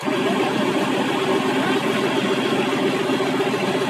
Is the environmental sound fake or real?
real